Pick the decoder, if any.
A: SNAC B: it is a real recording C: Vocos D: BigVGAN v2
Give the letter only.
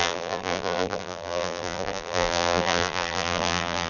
D